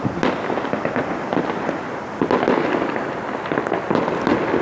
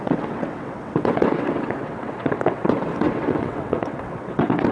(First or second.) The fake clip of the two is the second